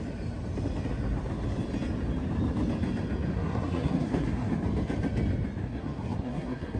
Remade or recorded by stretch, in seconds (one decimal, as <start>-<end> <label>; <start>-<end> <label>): 0.0-3.3 recorded; 3.3-4.5 remade; 4.5-5.6 recorded; 5.6-6.8 remade